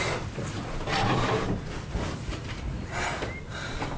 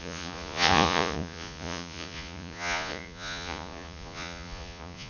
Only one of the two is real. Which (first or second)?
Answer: first